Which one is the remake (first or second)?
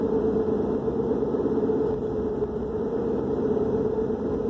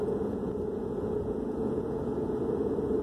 second